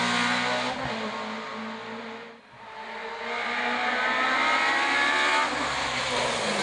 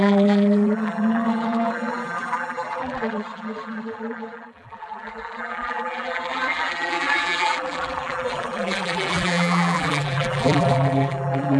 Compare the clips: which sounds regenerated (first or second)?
second